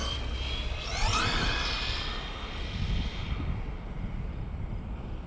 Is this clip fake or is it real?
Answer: real